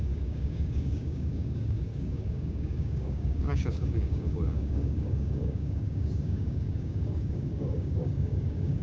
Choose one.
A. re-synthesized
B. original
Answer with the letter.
A